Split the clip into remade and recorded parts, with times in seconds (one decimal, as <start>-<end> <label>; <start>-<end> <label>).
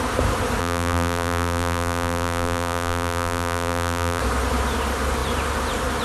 0.0-0.6 recorded; 0.6-4.2 remade; 4.2-6.0 recorded